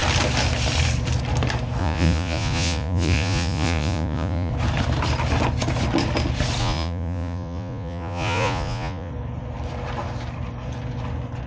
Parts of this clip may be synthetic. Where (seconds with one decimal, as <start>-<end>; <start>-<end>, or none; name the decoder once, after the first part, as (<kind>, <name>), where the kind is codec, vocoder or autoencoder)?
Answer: 1.8-4.5 (vocoder, Vocos); 6.6-9.1